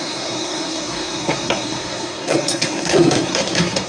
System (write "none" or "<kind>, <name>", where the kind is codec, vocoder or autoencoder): codec, SNAC